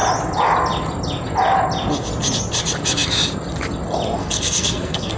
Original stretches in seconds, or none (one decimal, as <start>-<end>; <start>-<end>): 0.0-4.2